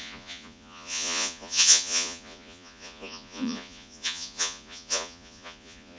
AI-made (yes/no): yes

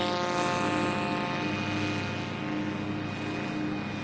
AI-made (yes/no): no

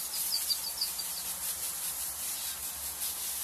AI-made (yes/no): no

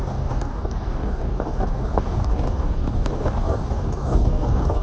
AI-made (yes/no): yes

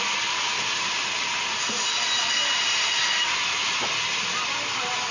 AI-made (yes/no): no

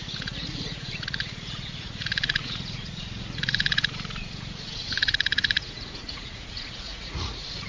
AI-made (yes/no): yes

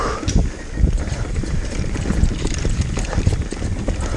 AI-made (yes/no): no